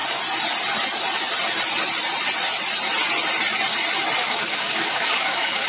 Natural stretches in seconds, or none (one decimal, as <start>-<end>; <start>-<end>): 0.0-4.2